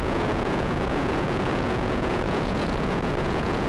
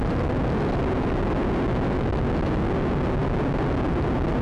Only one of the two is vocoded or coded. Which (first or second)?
first